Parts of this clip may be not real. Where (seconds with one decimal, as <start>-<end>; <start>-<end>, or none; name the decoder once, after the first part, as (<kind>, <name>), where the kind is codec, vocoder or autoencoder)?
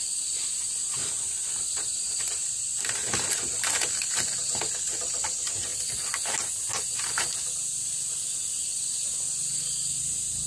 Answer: none